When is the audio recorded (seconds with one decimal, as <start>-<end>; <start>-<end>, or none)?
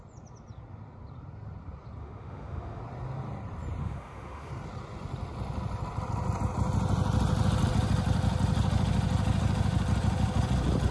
0.0-2.0; 2.8-3.8; 4.5-10.9